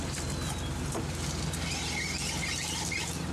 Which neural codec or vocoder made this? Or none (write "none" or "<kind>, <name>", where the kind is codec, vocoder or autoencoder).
none